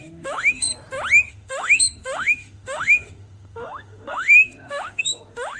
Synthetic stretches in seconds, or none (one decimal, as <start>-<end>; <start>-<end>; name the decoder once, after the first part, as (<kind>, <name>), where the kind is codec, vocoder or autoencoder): 0.0-0.7 (autoencoder, DAC-VAE); 1.3-5.6